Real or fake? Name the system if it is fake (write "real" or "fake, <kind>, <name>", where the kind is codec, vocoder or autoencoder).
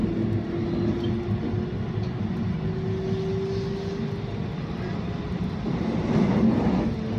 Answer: real